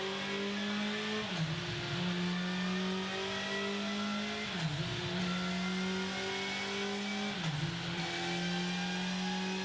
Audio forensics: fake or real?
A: real